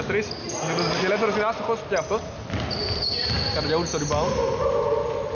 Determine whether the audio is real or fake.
real